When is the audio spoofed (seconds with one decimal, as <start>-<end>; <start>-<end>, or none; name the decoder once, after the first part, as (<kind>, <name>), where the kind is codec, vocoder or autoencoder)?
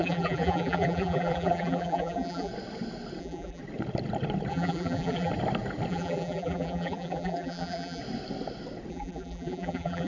0.0-2.5 (vocoder, BigVGAN v2); 3.2-3.6; 4.5-5.3; 5.9-8.0; 8.9-10.1